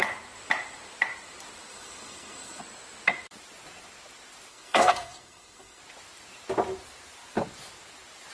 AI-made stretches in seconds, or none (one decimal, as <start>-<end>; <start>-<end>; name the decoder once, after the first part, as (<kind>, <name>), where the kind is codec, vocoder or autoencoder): 1.7-2.6 (codec, SNAC); 4.5-5.8